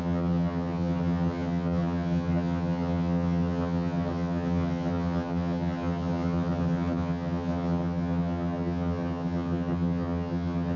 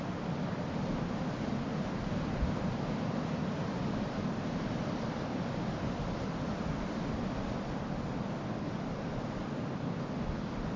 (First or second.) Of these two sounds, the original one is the second